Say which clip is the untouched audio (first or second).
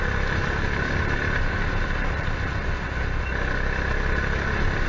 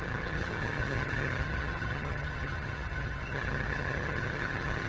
first